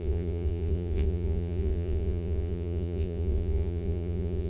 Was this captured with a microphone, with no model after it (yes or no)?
no